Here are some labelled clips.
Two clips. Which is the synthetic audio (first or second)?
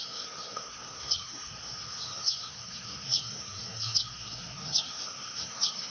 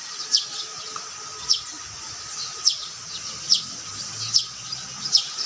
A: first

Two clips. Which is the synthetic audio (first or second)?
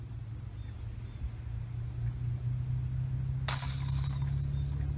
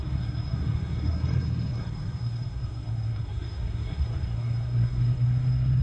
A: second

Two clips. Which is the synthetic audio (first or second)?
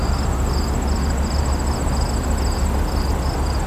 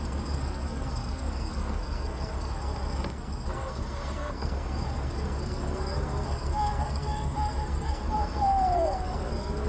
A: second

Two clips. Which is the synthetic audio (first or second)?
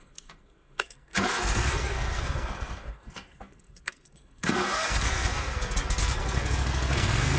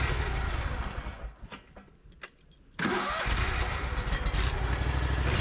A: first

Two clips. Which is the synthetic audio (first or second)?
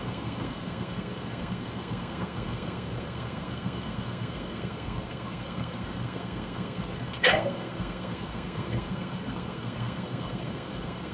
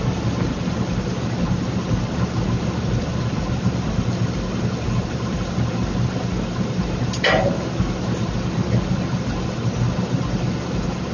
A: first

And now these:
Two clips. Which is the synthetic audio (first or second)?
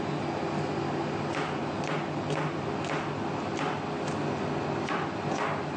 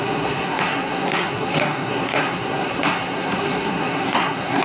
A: second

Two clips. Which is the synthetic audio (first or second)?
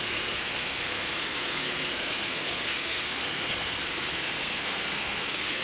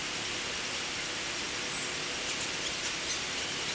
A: first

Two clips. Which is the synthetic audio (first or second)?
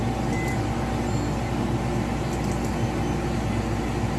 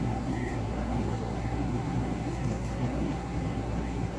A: second